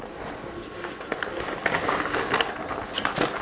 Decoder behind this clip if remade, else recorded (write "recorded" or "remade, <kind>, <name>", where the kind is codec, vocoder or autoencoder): recorded